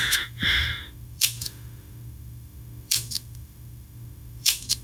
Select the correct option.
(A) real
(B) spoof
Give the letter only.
B